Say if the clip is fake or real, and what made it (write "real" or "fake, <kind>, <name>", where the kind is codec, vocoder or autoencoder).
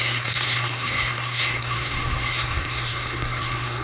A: fake, codec, SNAC